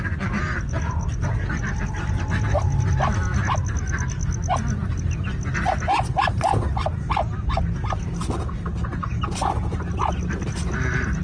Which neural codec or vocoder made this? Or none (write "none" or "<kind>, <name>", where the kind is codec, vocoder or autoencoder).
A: none